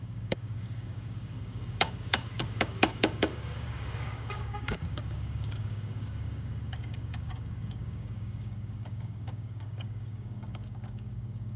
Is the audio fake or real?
fake